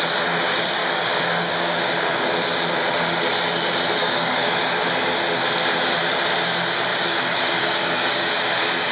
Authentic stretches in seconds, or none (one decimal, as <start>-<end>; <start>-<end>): 0.0-0.8; 2.3-4.0; 4.8-6.9; 8.3-8.9